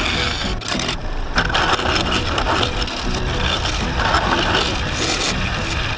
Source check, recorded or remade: recorded